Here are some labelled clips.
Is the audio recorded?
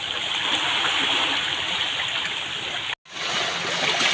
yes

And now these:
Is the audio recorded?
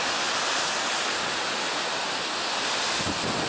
yes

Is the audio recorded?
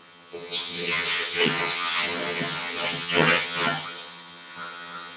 no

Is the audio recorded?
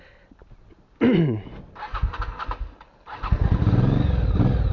yes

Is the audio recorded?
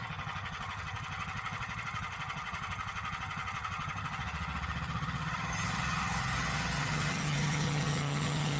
no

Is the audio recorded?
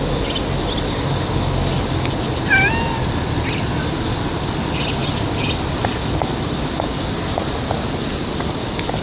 yes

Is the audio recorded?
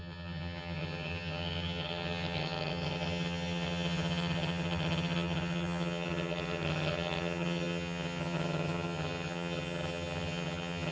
no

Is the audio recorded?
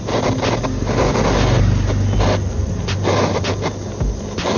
yes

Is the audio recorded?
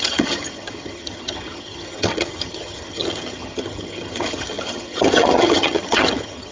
no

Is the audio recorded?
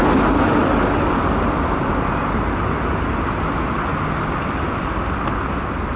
yes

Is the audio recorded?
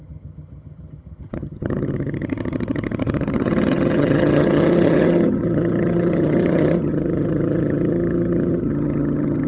no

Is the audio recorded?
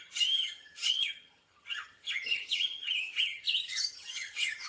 no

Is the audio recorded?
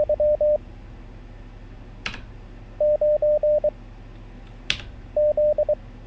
yes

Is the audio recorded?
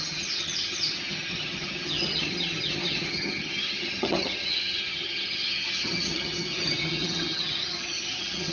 no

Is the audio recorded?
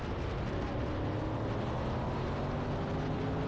yes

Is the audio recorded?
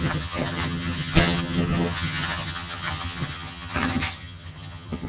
no